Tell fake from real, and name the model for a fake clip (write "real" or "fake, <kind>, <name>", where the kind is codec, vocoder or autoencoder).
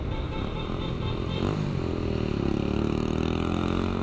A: real